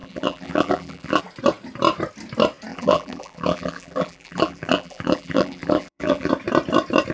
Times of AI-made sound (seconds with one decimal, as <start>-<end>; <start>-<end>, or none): 0.0-1.2; 2.7-6.3